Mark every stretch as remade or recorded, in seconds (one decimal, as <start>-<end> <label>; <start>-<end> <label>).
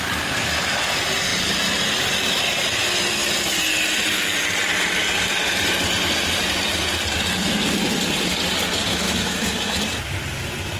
0.0-8.9 recorded; 8.9-9.4 remade; 9.4-10.8 recorded